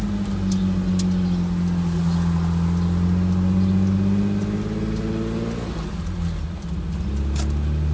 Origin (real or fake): real